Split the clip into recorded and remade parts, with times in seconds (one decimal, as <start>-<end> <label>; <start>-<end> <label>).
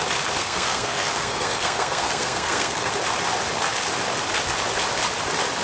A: 0.0-0.4 recorded; 0.4-2.9 remade; 2.9-5.6 recorded